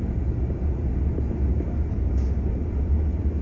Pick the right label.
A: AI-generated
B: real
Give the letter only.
B